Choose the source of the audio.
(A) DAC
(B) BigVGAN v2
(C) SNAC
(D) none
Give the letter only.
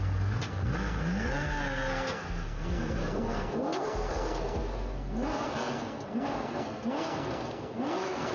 C